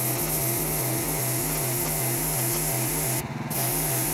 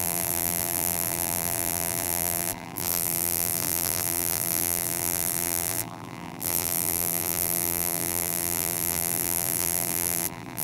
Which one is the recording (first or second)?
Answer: first